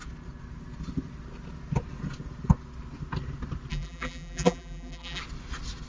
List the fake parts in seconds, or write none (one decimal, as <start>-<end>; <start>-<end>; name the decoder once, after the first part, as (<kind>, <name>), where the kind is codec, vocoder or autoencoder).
3.7-5.2 (vocoder, BigVGAN v2)